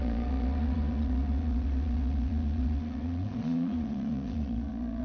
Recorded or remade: remade